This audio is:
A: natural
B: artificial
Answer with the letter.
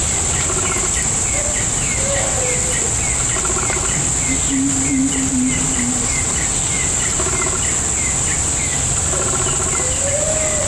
A